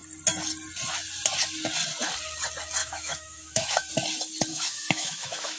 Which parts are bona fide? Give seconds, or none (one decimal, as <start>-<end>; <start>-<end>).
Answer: 0.0-2.8; 3.9-4.5